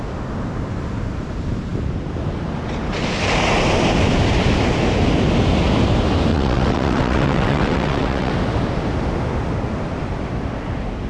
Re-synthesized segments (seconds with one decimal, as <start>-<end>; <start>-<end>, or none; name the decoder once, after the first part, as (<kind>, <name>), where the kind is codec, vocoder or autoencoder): 6.3-8.3 (vocoder, WaveNeXt)